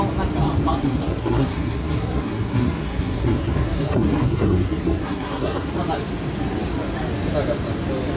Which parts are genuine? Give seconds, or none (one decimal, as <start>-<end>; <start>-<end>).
0.0-0.8; 5.7-8.2

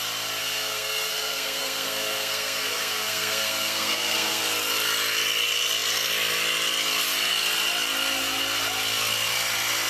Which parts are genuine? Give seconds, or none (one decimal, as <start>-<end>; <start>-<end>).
0.0-0.4; 4.4-9.9

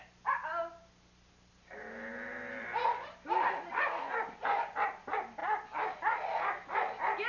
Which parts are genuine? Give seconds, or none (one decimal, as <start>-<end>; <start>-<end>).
0.0-7.3

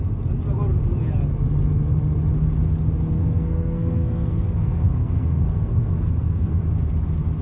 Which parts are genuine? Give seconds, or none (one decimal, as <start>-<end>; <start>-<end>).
0.0-3.2; 6.6-7.4

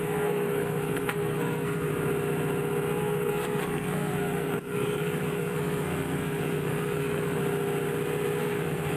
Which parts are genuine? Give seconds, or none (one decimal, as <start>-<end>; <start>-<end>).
1.9-3.0; 7.4-8.4

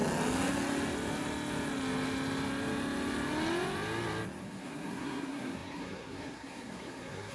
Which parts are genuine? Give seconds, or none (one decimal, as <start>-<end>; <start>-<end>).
0.0-4.4